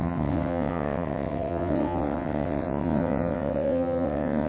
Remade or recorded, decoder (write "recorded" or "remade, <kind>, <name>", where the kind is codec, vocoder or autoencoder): remade, vocoder, WaveNeXt